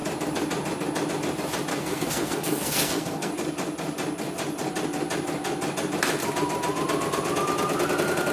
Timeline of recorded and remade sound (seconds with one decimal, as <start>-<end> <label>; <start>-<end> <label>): 0.0-1.7 recorded; 1.7-3.3 remade; 3.3-8.3 recorded